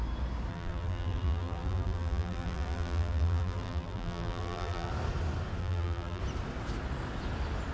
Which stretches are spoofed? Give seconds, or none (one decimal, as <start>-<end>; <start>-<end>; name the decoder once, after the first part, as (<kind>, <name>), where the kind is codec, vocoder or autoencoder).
0.5-4.9 (vocoder, BigVGAN v2); 5.6-6.2